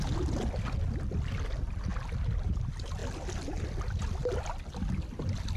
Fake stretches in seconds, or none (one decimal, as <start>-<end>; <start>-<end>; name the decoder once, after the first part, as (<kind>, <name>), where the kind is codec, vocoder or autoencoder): none